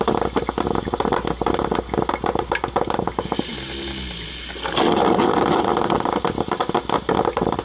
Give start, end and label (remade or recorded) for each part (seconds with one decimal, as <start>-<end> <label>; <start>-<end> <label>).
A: 0.0-7.6 recorded